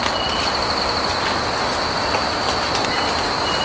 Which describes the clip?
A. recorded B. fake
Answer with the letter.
A